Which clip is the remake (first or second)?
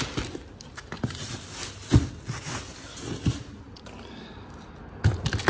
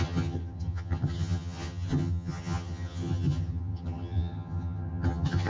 second